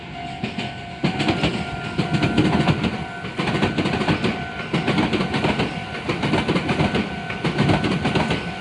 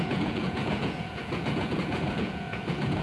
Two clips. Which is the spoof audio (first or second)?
second